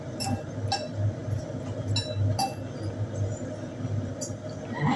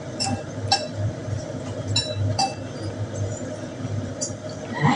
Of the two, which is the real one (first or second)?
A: first